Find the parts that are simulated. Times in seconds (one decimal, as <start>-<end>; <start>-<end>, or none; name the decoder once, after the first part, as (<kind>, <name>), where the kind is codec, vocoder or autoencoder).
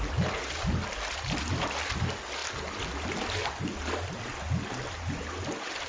none